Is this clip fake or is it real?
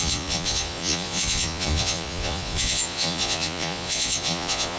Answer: fake